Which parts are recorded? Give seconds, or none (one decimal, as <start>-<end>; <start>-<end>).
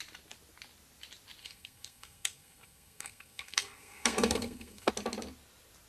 0.0-1.4; 4.9-5.9